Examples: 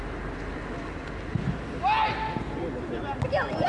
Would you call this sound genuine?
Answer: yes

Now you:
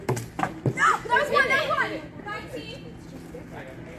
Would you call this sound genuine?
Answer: yes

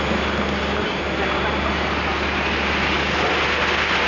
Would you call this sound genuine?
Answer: yes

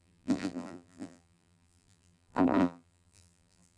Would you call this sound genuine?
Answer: no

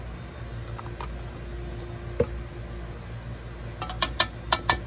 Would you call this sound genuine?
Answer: yes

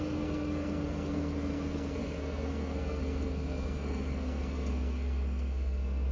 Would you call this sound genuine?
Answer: no